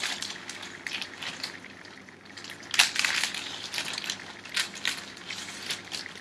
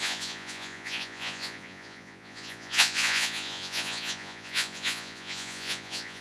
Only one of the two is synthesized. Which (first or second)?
second